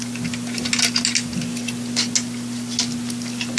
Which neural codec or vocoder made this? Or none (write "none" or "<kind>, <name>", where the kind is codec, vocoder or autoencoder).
none